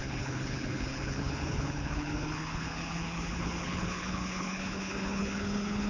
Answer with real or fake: fake